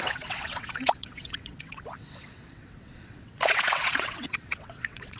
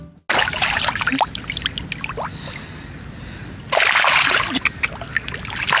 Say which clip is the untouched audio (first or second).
second